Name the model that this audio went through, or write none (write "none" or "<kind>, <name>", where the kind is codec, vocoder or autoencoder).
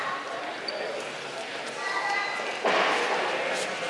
none